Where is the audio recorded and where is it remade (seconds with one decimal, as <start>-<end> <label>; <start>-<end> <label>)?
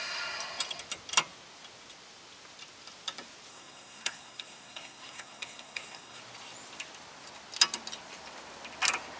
0.0-3.5 recorded; 3.5-6.2 remade; 6.2-9.2 recorded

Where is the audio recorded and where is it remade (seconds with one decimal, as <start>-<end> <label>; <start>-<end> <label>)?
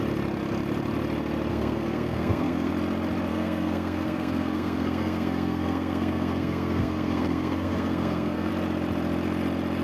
0.0-1.5 recorded; 1.5-2.7 remade; 2.7-3.3 recorded; 3.3-8.5 remade; 8.5-9.8 recorded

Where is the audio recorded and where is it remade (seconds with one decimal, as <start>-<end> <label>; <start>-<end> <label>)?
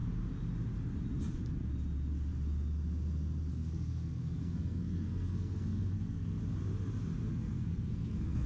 0.0-3.5 recorded; 3.5-6.4 remade; 6.4-7.3 recorded; 7.3-8.5 remade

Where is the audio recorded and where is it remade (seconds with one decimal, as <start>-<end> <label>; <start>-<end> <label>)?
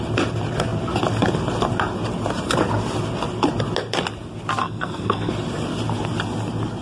0.0-4.6 recorded; 4.6-5.3 remade; 5.3-6.8 recorded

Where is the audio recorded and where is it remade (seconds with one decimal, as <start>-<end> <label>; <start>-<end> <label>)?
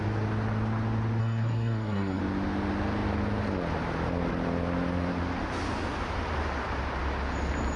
0.0-1.2 recorded; 1.2-2.2 remade; 2.2-7.8 recorded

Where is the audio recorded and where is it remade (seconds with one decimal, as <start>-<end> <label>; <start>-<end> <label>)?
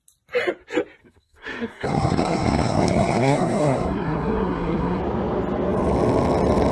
0.0-1.0 recorded; 1.0-5.0 remade; 5.0-6.7 recorded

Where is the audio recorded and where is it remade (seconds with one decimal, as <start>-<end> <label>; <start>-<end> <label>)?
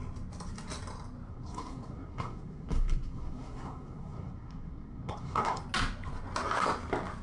0.0-1.3 recorded; 1.3-5.6 remade; 5.6-7.2 recorded